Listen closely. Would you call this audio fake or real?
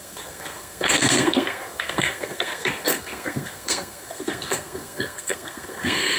fake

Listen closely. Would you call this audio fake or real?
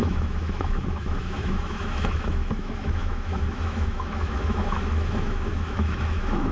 fake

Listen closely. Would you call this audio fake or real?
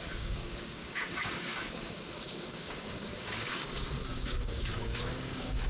fake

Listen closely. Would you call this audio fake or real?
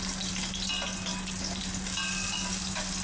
real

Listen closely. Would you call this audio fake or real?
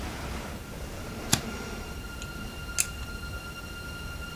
real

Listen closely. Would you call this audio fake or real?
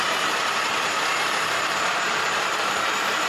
fake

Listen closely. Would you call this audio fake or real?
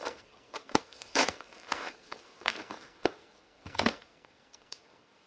fake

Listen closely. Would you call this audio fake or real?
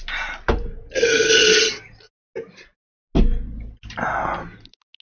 real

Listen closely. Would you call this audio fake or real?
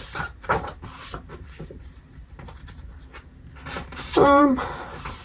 fake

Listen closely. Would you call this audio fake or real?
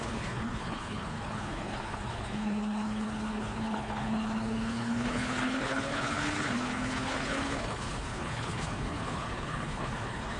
fake